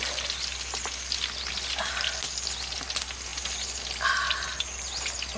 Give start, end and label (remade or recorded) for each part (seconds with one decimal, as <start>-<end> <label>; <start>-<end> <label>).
0.0-5.4 recorded